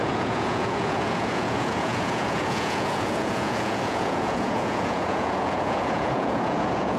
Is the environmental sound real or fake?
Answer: fake